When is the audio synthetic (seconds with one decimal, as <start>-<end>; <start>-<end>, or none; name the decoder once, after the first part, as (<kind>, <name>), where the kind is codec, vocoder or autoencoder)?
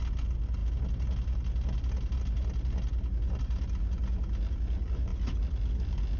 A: none